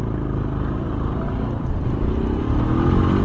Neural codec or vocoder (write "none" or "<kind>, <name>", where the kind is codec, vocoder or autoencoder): none